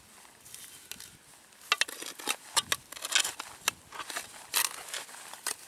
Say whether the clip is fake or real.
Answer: real